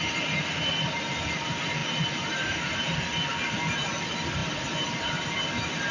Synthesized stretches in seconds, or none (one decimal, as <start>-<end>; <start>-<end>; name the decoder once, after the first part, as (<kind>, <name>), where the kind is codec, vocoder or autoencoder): none